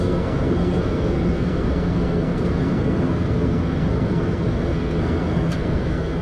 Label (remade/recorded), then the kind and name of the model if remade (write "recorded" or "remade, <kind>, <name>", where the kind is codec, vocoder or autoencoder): remade, codec, SNAC